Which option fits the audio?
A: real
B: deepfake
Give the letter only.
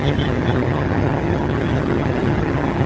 B